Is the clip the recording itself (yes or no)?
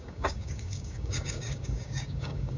no